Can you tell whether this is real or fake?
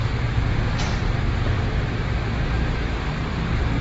real